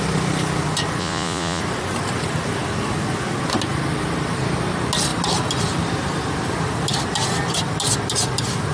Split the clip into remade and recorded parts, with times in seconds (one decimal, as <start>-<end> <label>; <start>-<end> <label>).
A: 0.0-1.0 recorded; 1.0-1.6 remade; 1.6-8.7 recorded